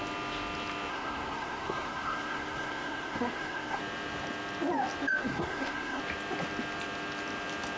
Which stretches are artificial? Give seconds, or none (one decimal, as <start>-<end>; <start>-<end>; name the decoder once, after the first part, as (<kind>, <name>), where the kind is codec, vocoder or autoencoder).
0.9-3.8 (codec, SNAC); 5.2-6.0